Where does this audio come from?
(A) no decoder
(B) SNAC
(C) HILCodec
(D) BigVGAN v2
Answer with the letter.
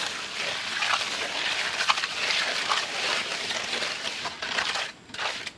A